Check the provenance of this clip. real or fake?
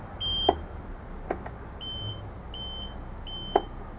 real